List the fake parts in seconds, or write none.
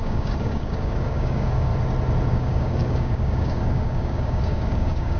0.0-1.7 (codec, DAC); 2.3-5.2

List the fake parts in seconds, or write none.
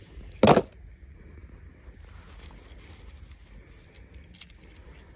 none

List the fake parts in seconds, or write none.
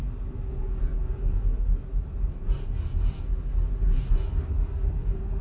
none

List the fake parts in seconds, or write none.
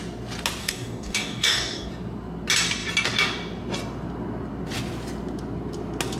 0.6-1.9 (codec, DAC)